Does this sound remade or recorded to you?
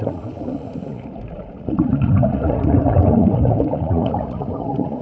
remade